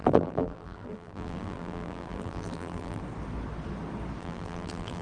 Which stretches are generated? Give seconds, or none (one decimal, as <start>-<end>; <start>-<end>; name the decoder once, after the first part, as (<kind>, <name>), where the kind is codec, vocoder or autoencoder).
0.0-3.0 (vocoder, BigVGAN v2); 4.2-5.0